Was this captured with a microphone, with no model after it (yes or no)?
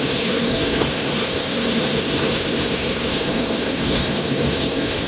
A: no